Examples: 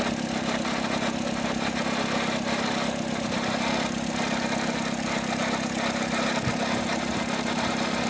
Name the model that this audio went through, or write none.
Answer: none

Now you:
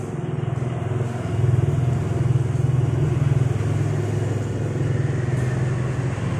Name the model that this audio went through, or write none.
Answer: none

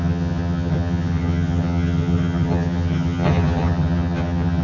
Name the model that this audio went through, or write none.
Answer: vocoder, HiFi-GAN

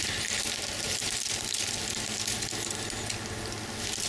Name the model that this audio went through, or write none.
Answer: none